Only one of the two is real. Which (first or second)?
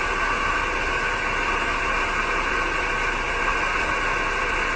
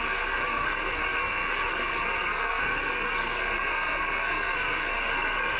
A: first